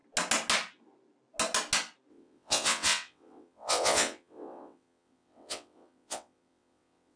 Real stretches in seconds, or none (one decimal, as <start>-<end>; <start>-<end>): 0.0-2.1